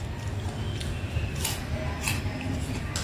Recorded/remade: recorded